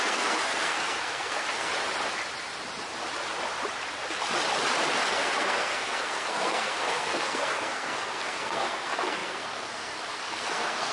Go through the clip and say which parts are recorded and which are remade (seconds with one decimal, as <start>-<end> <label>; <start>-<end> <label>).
0.0-1.7 remade; 1.7-5.1 recorded; 5.1-10.9 remade